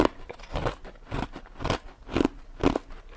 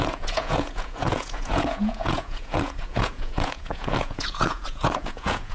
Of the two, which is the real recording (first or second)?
first